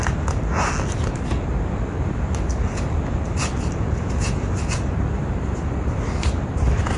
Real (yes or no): yes